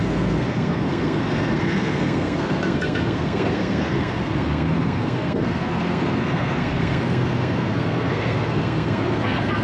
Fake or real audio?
fake